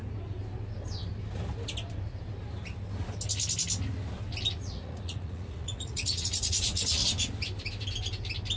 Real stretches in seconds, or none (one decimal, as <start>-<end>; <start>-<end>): 0.0-4.5; 7.0-8.6